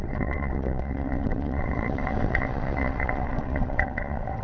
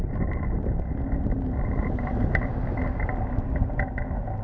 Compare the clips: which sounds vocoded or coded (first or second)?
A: first